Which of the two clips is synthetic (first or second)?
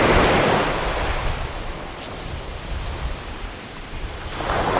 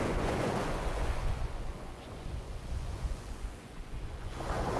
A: second